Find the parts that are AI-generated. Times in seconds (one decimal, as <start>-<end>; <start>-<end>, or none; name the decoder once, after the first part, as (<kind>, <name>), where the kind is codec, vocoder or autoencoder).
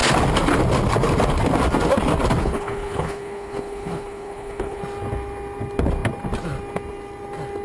2.4-4.8 (codec, HILCodec)